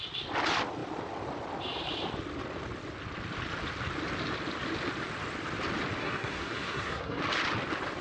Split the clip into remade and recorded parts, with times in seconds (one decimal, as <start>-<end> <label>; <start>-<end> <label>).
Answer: 0.0-6.0 recorded; 6.0-7.2 remade; 7.2-8.0 recorded

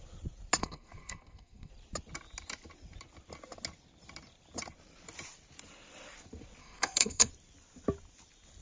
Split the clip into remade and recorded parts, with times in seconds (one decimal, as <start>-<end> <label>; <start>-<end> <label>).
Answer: 0.0-0.6 recorded; 0.6-1.7 remade; 1.7-6.6 recorded; 6.6-7.3 remade; 7.3-8.6 recorded

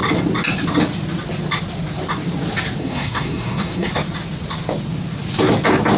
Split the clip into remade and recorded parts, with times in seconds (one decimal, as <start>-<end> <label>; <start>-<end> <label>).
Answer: 0.0-2.8 recorded; 2.8-3.9 remade; 3.9-6.0 recorded